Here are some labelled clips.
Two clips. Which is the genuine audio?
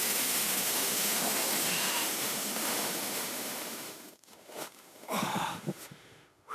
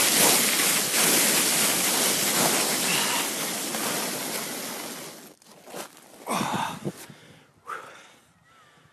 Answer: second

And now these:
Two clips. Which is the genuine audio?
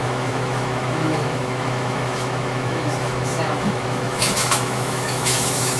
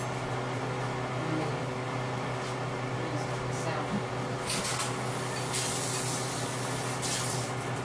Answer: second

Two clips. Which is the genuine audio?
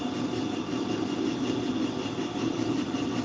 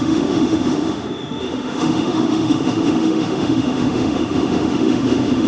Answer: first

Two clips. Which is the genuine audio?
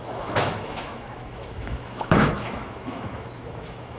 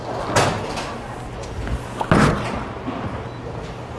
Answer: second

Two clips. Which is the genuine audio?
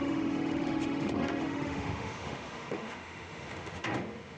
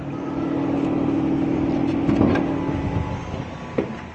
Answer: second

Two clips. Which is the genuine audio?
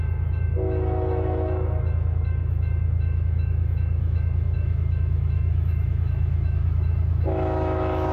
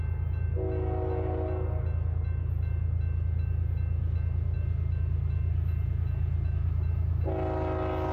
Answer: second